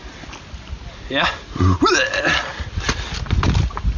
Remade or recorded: recorded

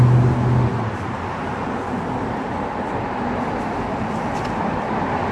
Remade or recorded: recorded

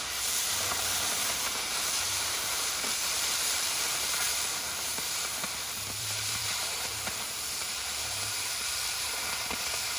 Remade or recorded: remade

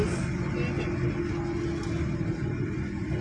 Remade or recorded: recorded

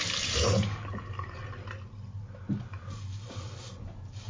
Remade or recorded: recorded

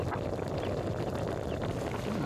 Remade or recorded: recorded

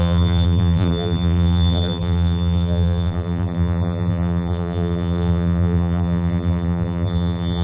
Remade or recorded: remade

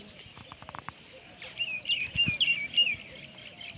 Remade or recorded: remade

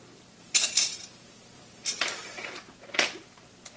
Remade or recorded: remade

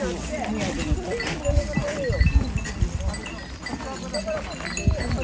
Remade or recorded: recorded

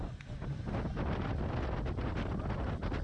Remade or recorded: recorded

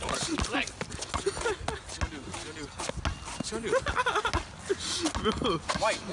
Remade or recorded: recorded